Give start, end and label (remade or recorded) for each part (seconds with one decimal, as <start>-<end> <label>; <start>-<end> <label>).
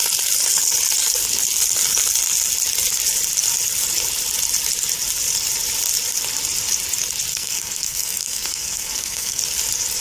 0.0-7.3 recorded; 7.3-9.4 remade; 9.4-10.0 recorded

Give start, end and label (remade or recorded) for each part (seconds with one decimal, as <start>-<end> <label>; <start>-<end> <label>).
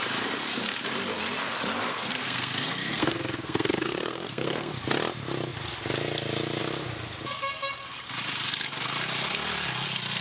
0.0-1.9 recorded; 1.9-4.7 remade; 4.7-10.2 recorded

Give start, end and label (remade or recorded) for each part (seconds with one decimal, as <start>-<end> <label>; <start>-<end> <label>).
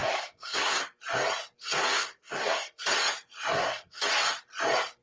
0.0-0.8 remade; 0.8-1.6 recorded; 1.6-2.8 remade; 2.8-3.5 recorded; 3.5-4.0 remade; 4.0-5.0 recorded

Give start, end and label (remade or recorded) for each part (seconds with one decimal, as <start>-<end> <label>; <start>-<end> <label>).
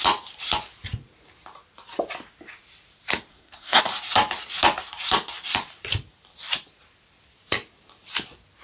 0.0-3.3 recorded; 3.3-3.8 remade; 3.8-8.6 recorded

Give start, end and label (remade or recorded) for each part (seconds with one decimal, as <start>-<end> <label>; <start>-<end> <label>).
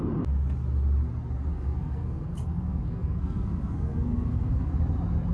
0.0-1.5 recorded; 1.5-4.7 remade; 4.7-5.3 recorded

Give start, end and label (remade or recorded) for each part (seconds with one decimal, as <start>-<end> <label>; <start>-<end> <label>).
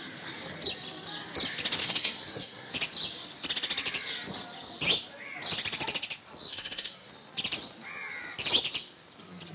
0.0-1.8 recorded; 1.8-2.7 remade; 2.7-6.5 recorded; 6.5-7.1 remade; 7.1-9.5 recorded